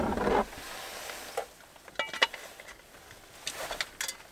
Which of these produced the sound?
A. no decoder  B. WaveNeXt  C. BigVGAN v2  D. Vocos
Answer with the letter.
A